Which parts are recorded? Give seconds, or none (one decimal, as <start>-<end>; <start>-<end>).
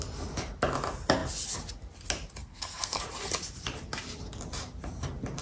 0.0-2.4; 3.0-5.4